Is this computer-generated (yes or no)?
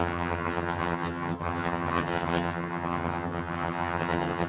yes